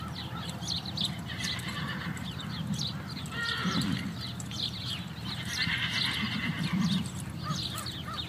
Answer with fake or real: fake